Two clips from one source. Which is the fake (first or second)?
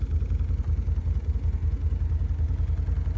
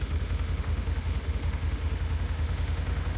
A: second